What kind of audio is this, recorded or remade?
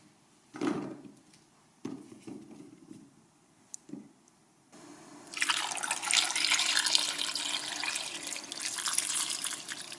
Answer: remade